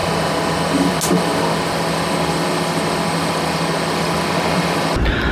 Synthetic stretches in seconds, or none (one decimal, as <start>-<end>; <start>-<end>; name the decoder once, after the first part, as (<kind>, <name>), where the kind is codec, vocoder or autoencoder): none